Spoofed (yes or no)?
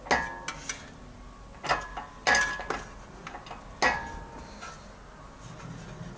no